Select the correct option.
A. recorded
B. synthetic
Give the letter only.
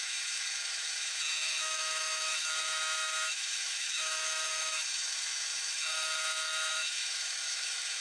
B